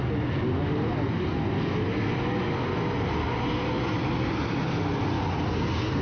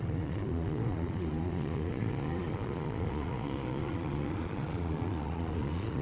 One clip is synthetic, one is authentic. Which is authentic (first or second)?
first